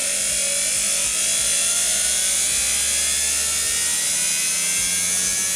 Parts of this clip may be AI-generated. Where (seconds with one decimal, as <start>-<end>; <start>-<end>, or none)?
none